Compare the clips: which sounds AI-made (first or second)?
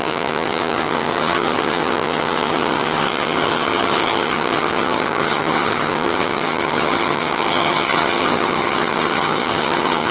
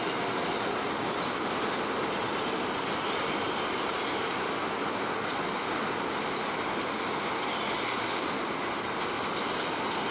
first